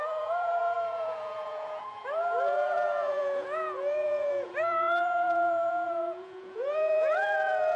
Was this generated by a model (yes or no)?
yes